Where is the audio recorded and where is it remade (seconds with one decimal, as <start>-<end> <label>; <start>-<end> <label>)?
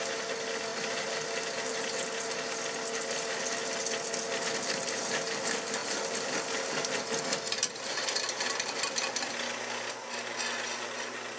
0.0-11.4 recorded